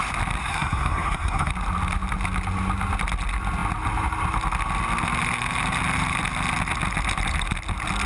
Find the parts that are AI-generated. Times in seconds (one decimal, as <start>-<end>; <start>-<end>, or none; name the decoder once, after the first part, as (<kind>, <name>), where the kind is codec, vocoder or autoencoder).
0.4-1.5 (codec, SNAC)